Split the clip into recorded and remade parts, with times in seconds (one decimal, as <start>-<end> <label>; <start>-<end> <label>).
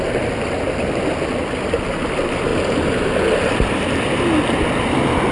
0.0-5.3 recorded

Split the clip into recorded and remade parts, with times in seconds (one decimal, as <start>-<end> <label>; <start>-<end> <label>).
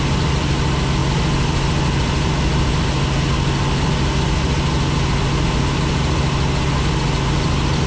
0.0-7.9 recorded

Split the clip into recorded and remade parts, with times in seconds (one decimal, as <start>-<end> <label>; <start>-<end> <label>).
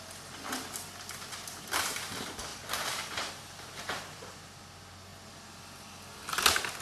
0.0-2.5 recorded; 2.5-4.6 remade; 4.6-6.8 recorded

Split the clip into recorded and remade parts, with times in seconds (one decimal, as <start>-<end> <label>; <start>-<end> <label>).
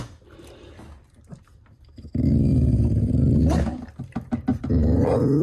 0.0-2.5 recorded; 2.5-3.4 remade; 3.4-4.5 recorded; 4.5-5.4 remade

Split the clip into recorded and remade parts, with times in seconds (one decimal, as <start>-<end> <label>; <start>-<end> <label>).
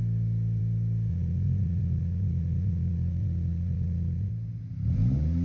0.0-1.1 recorded; 1.1-4.3 remade; 4.3-5.4 recorded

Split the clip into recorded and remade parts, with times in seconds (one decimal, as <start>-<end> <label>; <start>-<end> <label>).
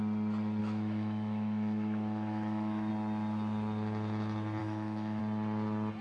0.0-0.6 recorded; 0.6-2.9 remade; 2.9-4.6 recorded; 4.6-5.2 remade; 5.2-6.0 recorded